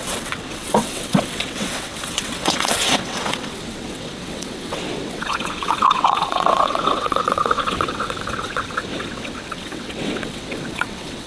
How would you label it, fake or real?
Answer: fake